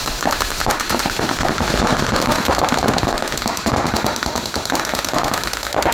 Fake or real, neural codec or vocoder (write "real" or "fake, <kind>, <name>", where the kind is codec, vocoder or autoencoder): fake, autoencoder, DAC-VAE